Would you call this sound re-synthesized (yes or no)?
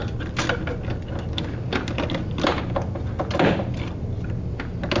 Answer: no